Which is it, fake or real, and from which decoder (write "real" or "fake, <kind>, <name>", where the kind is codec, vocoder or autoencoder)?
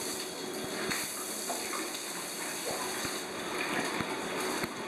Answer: real